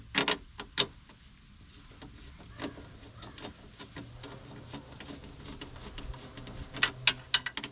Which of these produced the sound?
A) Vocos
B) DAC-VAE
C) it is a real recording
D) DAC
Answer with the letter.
C